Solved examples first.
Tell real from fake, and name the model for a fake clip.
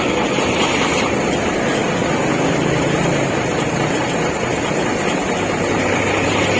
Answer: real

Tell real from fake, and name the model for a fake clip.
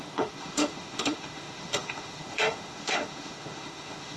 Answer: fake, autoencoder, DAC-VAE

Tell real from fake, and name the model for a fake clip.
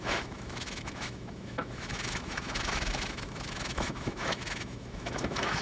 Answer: fake, autoencoder, DAC-VAE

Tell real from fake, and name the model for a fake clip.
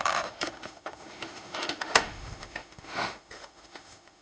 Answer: fake, autoencoder, DAC-VAE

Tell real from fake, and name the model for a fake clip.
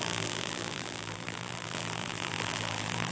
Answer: fake, vocoder, BigVGAN v2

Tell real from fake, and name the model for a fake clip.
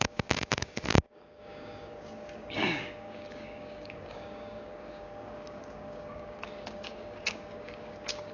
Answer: fake, codec, DAC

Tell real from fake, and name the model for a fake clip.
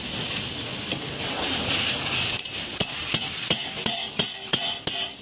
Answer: real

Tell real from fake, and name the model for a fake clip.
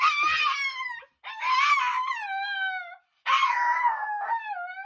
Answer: real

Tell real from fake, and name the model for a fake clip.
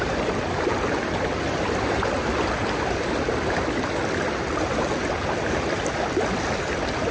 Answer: real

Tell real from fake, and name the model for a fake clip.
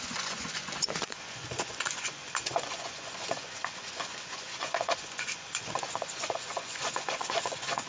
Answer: fake, vocoder, Vocos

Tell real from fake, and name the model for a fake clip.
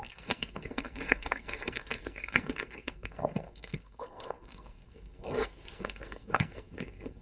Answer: fake, codec, SNAC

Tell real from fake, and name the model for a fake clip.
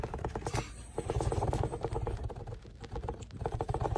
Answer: fake, vocoder, BigVGAN v2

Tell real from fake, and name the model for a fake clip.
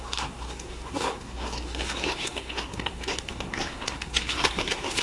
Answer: fake, codec, SNAC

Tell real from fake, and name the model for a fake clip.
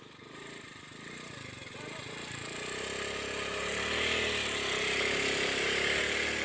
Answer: real